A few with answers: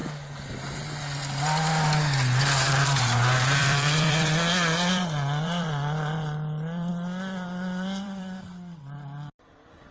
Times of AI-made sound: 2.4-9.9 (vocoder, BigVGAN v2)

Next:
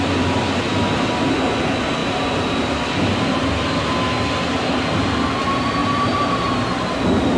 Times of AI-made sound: 2.0-3.5 (vocoder, BigVGAN v2); 5.8-6.5